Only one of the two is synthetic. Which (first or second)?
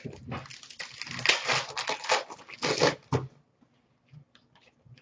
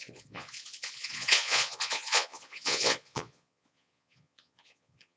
second